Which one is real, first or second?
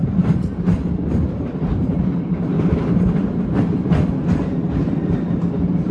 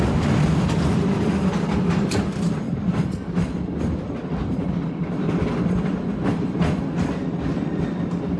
second